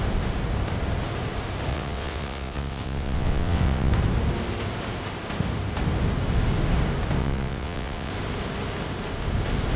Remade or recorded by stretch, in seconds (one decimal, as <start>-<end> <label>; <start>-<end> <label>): 0.0-1.7 recorded; 1.7-3.9 remade; 3.9-7.2 recorded; 7.2-8.1 remade; 8.1-9.8 recorded